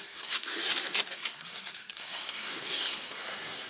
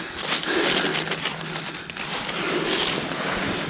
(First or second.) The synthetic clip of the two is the first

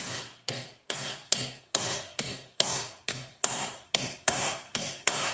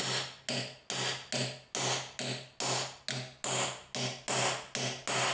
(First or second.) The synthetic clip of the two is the first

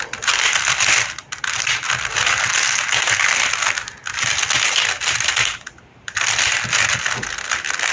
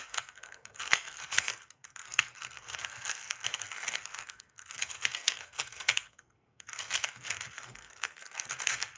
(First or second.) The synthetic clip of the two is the second